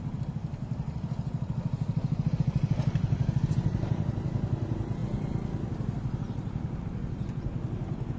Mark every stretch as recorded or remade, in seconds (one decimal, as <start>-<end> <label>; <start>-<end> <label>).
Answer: 0.0-8.2 recorded